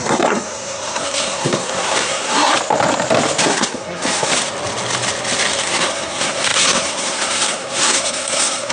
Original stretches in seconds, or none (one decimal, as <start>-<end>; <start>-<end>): 2.5-3.4; 4.3-5.6